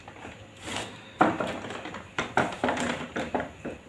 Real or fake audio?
real